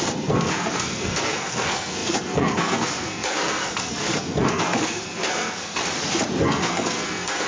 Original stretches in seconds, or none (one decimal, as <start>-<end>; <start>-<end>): 5.8-6.4